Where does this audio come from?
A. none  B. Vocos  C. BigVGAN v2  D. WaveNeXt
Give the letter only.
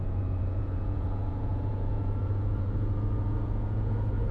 B